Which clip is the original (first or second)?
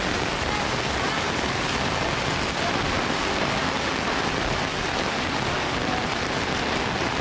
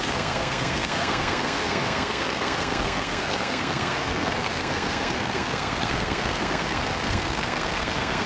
first